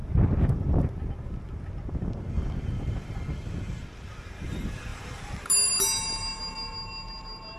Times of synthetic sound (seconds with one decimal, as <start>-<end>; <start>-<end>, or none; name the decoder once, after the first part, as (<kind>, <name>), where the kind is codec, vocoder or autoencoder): none